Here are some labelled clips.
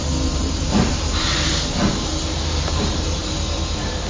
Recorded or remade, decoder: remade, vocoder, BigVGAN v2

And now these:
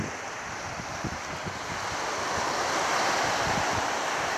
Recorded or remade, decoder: recorded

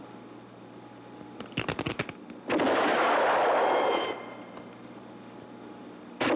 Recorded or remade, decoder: recorded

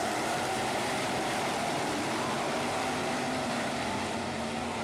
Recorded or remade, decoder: remade, vocoder, BigVGAN v2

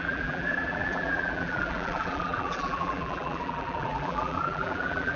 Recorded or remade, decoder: remade, vocoder, BigVGAN v2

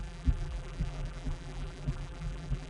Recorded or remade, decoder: remade, vocoder, BigVGAN v2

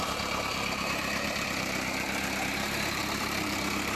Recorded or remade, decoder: remade, vocoder, BigVGAN v2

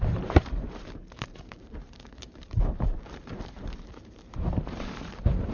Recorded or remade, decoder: remade, vocoder, BigVGAN v2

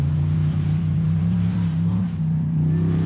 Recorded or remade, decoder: remade, vocoder, BigVGAN v2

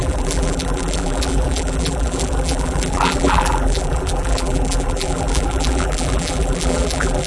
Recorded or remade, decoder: remade, vocoder, BigVGAN v2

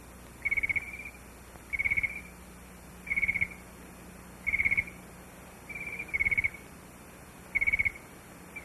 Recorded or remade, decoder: recorded